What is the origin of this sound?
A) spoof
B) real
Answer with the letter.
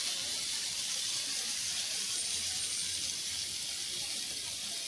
B